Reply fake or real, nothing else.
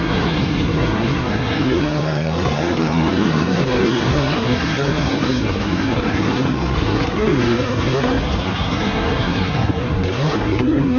fake